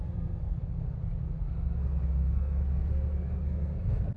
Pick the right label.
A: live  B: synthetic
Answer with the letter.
B